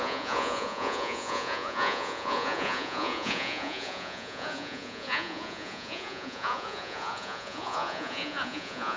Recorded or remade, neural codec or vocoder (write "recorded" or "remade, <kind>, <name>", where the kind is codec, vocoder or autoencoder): remade, vocoder, Vocos